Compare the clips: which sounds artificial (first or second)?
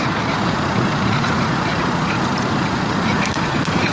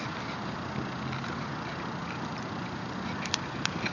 first